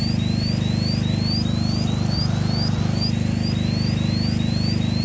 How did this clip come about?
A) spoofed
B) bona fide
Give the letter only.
B